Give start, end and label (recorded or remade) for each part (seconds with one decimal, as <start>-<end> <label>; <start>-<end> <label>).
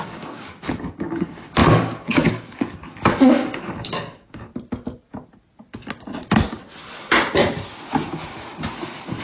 0.0-4.5 remade; 4.5-8.7 recorded; 8.7-9.2 remade